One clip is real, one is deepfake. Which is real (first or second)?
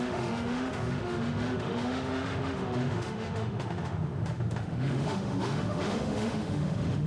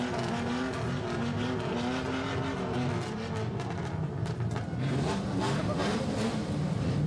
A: second